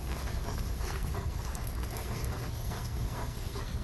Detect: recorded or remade remade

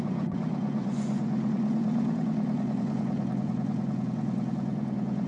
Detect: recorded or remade remade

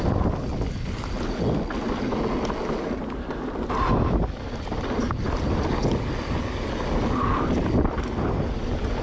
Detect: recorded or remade recorded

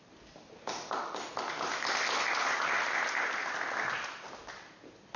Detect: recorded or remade recorded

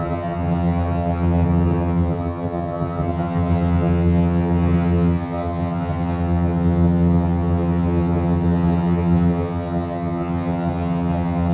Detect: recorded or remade remade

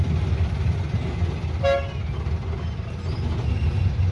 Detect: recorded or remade recorded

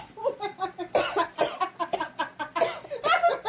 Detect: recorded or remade recorded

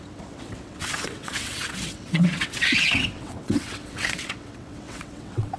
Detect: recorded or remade remade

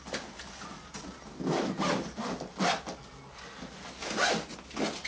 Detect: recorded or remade recorded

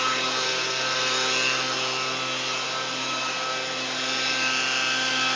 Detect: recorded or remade recorded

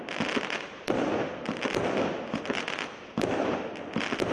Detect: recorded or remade recorded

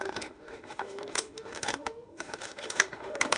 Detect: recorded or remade remade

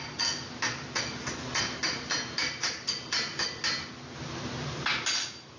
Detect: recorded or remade recorded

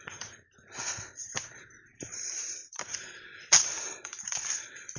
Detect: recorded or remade remade